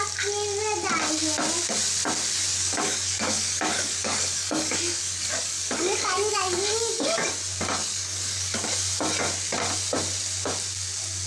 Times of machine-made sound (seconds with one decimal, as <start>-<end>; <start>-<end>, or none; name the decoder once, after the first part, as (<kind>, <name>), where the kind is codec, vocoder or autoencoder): 2.5-7.3 (codec, DAC); 7.8-8.7